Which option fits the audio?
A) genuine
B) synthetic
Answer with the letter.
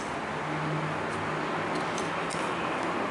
A